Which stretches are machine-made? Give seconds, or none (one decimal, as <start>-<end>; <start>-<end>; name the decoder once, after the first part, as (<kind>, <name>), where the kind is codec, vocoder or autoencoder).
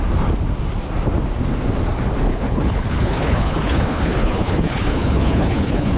2.3-6.0 (codec, HILCodec)